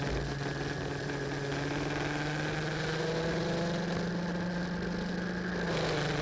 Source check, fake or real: real